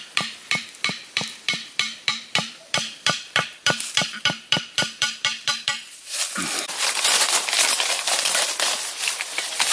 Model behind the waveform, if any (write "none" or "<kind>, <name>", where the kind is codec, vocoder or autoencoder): vocoder, BigVGAN v2